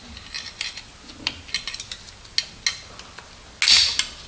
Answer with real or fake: real